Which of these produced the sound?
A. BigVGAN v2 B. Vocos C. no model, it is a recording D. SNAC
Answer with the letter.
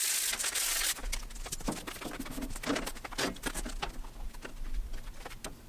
C